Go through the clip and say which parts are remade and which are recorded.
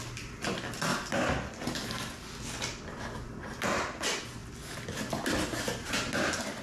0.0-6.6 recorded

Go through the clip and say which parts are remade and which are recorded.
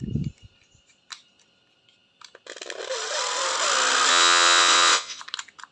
0.0-4.1 recorded; 4.1-5.2 remade; 5.2-5.7 recorded